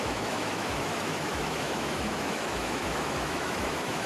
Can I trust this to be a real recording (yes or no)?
no